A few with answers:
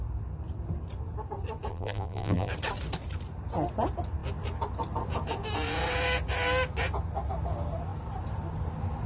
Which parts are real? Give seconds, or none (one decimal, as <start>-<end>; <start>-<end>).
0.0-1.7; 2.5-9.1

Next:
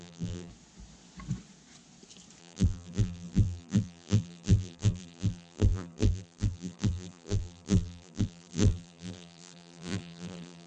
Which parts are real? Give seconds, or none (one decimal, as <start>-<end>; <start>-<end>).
0.5-2.4

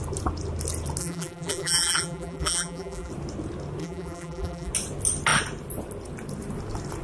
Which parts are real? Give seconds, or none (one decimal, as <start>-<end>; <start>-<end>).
0.0-1.0; 3.1-3.8; 4.7-7.0

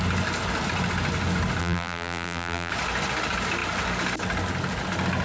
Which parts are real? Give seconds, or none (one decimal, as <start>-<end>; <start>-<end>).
0.0-1.6; 2.7-5.2